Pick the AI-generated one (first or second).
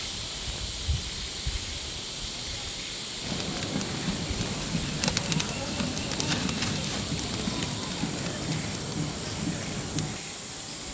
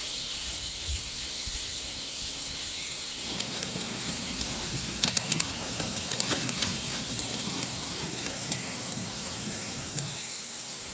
second